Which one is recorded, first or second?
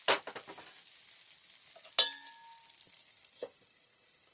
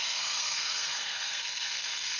first